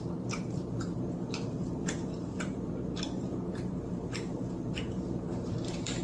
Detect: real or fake fake